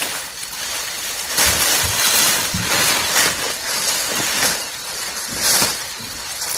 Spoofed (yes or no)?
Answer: no